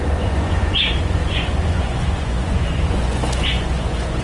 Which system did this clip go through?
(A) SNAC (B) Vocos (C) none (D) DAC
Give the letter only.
B